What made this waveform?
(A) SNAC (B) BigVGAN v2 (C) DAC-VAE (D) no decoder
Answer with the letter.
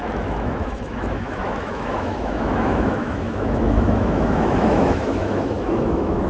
C